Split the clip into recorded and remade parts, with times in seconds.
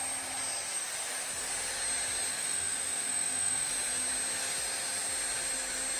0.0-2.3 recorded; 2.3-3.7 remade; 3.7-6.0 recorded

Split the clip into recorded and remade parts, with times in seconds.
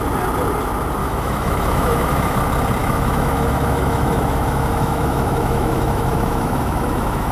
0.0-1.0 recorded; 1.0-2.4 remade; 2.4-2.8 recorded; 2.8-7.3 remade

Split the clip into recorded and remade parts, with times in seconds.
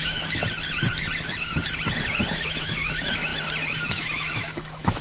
0.0-0.4 remade; 0.4-2.3 recorded; 2.3-3.3 remade; 3.3-3.9 recorded; 3.9-5.0 remade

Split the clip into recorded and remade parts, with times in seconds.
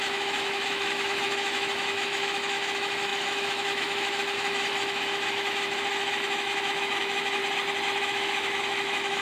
0.0-7.4 remade; 7.4-8.0 recorded; 8.0-9.2 remade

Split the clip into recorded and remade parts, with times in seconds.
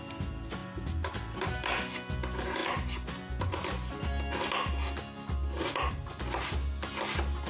0.0-7.5 recorded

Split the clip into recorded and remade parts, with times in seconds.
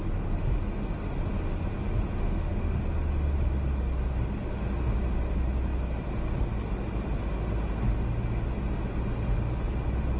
0.0-2.2 recorded; 2.2-2.8 remade; 2.8-10.2 recorded